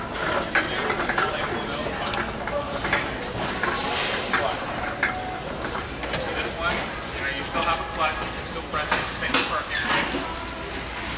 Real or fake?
real